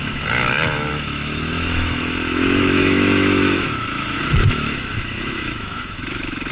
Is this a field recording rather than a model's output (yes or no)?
no